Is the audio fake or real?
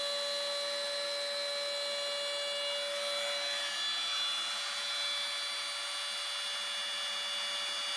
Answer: real